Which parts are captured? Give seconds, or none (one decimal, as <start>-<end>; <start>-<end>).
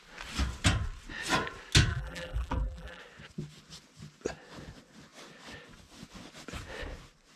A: 0.0-1.9; 3.0-7.4